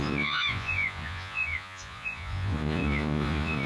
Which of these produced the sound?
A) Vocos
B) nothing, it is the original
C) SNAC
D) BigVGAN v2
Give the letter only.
A